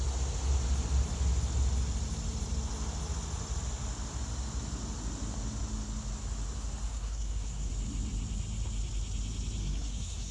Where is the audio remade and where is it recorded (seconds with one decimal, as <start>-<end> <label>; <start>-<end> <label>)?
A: 0.0-6.9 recorded; 6.9-7.7 remade; 7.7-9.6 recorded; 9.6-10.3 remade